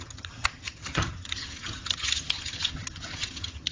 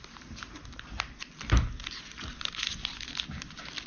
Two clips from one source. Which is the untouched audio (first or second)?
second